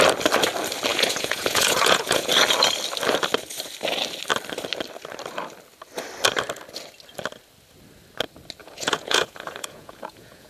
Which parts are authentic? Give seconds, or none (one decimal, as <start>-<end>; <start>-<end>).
0.0-0.9; 2.3-8.6